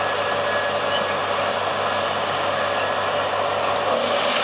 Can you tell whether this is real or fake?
real